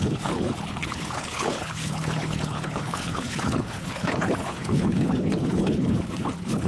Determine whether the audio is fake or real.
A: fake